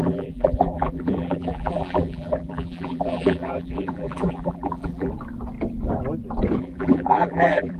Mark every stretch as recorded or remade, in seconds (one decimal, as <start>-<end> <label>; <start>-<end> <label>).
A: 0.0-5.1 remade; 5.1-6.6 recorded; 6.6-7.8 remade

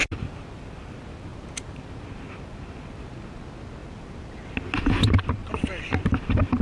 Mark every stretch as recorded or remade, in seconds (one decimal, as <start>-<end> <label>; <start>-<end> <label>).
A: 0.0-6.6 recorded

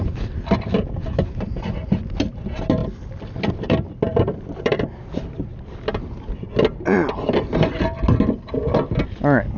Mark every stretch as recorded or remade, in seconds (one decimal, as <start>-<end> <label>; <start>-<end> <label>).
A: 0.0-5.5 remade; 5.5-9.6 recorded